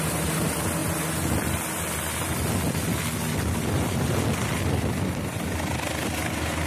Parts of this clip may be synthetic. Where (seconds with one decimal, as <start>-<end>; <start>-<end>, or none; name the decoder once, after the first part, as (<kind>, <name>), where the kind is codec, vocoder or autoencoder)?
none